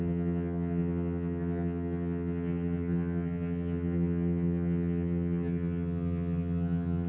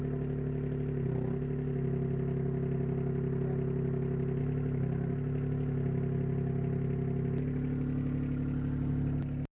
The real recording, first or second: second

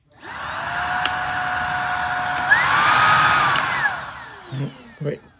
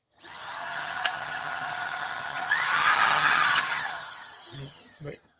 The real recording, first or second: first